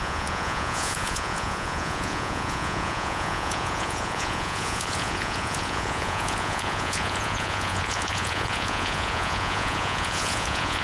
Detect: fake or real fake